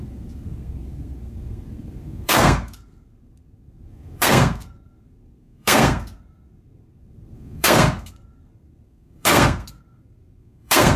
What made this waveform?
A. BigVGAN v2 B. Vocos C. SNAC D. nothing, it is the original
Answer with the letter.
C